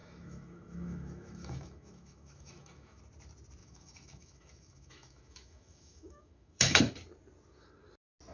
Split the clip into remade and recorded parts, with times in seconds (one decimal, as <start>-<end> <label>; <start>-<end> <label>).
0.0-3.0 remade; 3.0-3.6 recorded; 3.6-6.8 remade; 6.8-8.3 recorded